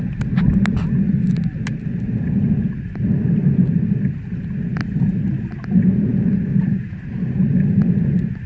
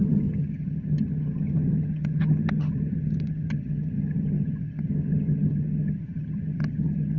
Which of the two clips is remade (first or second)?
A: second